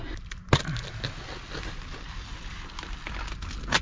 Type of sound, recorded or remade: recorded